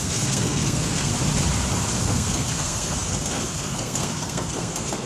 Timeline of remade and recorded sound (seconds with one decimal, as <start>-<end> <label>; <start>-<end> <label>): 0.0-1.1 remade; 1.1-1.9 recorded; 1.9-5.1 remade